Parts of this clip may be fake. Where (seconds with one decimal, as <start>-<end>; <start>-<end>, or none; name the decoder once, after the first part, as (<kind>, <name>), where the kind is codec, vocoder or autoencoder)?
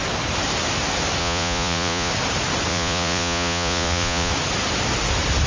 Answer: 1.2-2.1 (vocoder, Vocos); 2.7-4.3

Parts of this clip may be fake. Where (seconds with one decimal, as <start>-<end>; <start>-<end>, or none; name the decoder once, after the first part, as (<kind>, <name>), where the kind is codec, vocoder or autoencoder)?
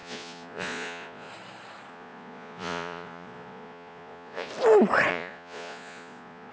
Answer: 0.0-1.3 (vocoder, Vocos); 1.9-4.5; 5.1-6.5